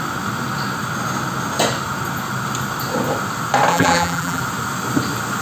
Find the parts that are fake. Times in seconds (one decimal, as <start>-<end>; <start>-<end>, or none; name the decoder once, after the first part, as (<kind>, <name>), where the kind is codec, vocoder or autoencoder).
3.7-4.4 (vocoder, BigVGAN v2)